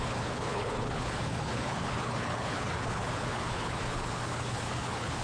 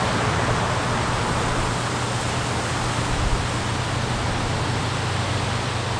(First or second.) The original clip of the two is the second